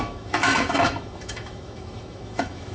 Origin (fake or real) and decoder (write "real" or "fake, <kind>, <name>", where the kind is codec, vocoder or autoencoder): fake, autoencoder, DAC-VAE